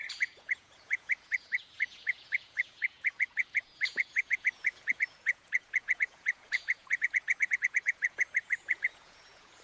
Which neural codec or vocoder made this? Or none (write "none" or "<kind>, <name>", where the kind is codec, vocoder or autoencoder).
vocoder, Vocos